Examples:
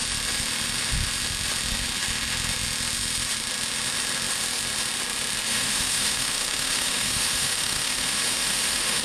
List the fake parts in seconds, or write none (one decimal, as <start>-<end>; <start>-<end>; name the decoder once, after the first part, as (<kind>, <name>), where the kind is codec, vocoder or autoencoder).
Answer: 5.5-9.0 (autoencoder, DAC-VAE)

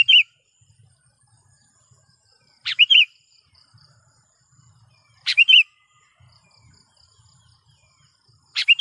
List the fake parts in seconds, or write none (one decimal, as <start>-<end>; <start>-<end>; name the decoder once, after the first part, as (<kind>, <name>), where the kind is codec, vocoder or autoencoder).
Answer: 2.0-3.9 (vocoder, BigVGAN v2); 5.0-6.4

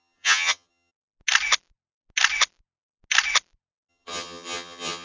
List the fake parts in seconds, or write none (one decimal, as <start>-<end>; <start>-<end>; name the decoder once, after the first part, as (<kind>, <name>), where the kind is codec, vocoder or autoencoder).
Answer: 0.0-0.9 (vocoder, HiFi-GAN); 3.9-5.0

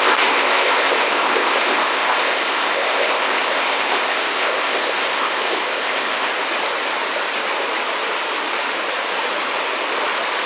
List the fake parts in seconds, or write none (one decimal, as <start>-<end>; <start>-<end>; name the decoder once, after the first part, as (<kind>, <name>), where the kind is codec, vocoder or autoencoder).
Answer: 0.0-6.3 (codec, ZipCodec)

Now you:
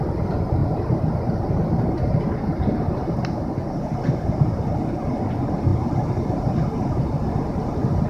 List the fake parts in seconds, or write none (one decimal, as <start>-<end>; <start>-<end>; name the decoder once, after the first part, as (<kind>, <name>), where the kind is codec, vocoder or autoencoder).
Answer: 5.7-7.3 (vocoder, BigVGAN v2)